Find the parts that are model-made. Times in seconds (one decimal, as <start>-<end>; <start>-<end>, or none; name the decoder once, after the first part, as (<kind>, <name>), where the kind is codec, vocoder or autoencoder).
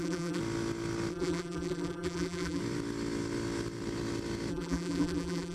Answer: 0.0-0.4 (vocoder, BigVGAN v2); 1.1-2.6; 4.5-5.5